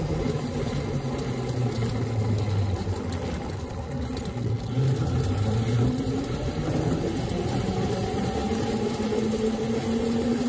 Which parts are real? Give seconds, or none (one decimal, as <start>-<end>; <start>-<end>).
0.0-10.5